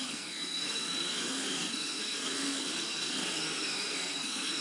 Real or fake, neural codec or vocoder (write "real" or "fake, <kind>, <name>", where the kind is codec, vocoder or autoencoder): fake, codec, SNAC